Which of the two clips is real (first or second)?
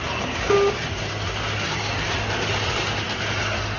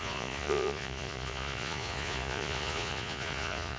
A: first